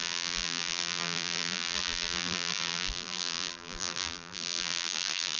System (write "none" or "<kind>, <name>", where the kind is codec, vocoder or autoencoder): vocoder, BigVGAN v2